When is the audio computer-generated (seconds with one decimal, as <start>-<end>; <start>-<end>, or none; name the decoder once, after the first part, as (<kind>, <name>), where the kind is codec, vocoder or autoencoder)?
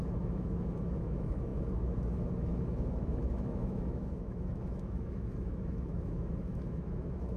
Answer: 0.0-7.4 (autoencoder, DAC-VAE)